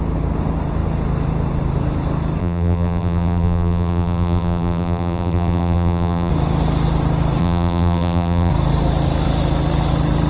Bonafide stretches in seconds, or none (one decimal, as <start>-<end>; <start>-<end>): 0.0-2.4; 6.3-7.4; 8.5-10.3